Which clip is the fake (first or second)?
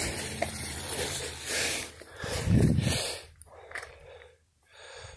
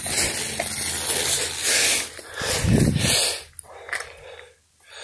first